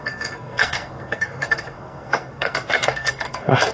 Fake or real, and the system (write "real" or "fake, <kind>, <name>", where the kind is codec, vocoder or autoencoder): fake, codec, SNAC